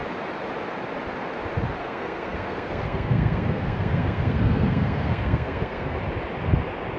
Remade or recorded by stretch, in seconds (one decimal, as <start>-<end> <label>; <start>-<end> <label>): 0.0-1.8 recorded; 1.8-6.0 remade; 6.0-7.0 recorded